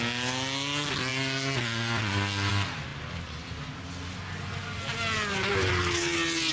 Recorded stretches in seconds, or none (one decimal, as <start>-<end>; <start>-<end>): 0.0-6.5